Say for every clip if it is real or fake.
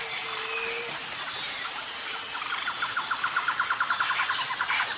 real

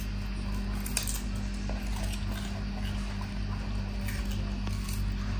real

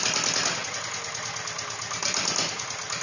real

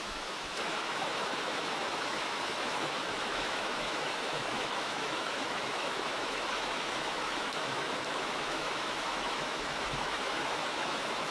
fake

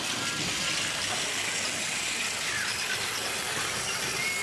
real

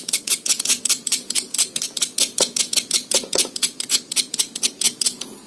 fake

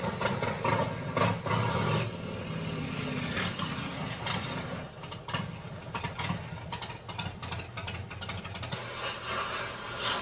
real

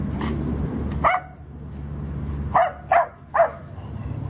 real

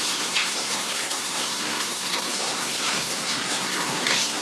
fake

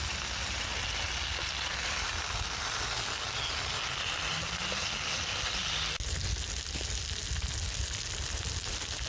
real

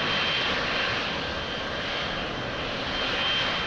real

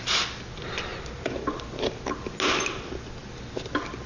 real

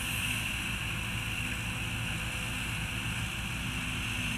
real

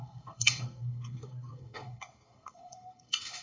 fake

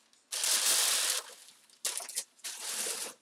real